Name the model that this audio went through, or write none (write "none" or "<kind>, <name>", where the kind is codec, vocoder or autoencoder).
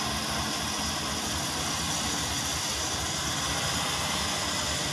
none